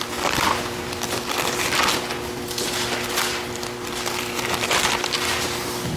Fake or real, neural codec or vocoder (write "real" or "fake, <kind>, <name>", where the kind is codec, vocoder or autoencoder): real